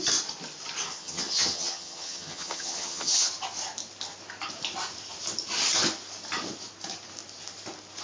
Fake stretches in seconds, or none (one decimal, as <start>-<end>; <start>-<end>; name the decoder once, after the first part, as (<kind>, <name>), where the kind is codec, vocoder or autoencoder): 0.9-3.3 (vocoder, HiFi-GAN)